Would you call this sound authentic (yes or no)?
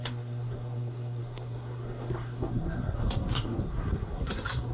no